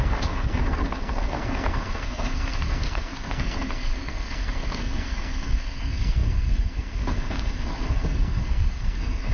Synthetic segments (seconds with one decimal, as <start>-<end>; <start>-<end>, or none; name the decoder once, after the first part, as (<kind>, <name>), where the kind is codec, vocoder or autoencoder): 0.0-9.3 (codec, SNAC)